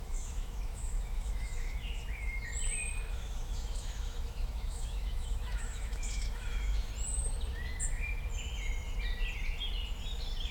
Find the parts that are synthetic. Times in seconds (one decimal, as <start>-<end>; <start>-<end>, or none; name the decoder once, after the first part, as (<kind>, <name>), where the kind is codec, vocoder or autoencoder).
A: 0.0-2.5 (autoencoder, DAC-VAE); 3.1-6.9